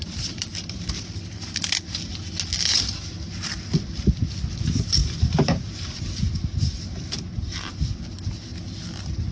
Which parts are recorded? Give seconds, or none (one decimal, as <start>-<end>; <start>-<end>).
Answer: 0.0-0.5; 1.0-5.0; 7.7-9.3